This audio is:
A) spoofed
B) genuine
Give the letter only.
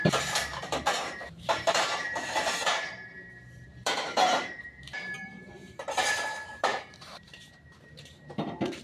A